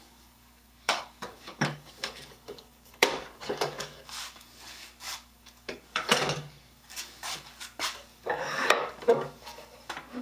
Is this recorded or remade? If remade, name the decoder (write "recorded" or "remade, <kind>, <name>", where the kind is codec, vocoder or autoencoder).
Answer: remade, codec, DAC